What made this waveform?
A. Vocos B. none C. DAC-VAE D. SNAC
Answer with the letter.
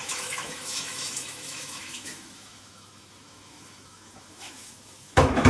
C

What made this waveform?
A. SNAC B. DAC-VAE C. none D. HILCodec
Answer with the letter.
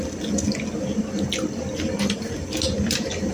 C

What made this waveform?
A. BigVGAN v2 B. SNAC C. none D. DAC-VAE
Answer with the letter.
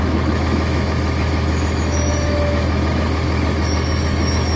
D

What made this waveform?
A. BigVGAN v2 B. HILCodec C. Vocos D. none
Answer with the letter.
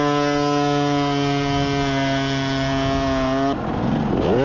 D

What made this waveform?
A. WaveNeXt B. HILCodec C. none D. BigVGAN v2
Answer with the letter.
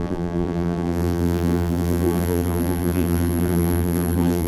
D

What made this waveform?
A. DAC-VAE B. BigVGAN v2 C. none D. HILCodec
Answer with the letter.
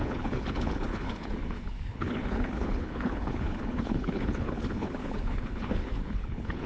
D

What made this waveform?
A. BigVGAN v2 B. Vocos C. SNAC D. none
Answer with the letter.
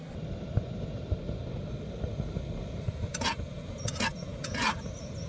D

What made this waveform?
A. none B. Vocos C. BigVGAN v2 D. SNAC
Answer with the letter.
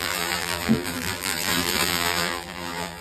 C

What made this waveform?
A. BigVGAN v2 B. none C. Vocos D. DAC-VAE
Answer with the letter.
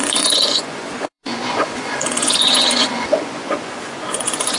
C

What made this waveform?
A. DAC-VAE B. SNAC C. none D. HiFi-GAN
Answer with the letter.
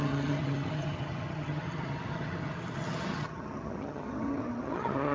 D